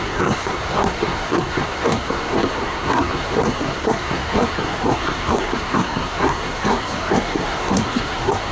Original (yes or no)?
no